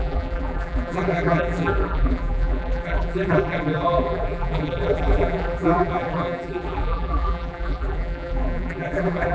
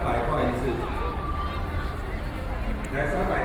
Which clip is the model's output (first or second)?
first